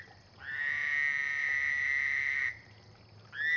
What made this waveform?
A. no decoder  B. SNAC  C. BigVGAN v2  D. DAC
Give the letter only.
A